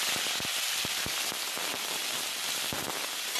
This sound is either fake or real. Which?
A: real